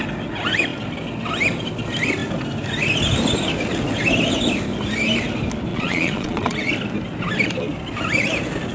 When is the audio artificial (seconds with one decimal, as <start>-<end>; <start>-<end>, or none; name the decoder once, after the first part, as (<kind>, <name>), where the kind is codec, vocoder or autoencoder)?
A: 5.7-6.7 (vocoder, Vocos)